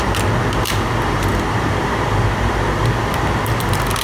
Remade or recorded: recorded